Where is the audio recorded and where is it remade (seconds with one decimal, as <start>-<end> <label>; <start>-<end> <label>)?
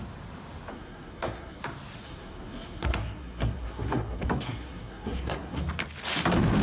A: 0.0-0.7 recorded; 0.7-1.6 remade; 1.6-2.0 recorded; 2.0-5.6 remade; 5.6-6.6 recorded